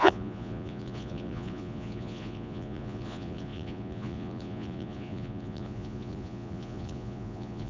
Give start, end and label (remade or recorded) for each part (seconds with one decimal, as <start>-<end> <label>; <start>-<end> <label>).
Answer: 0.0-7.7 remade